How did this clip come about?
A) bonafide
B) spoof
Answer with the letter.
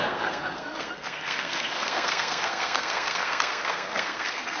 B